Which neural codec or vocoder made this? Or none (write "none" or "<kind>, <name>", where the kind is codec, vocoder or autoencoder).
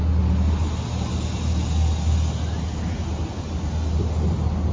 none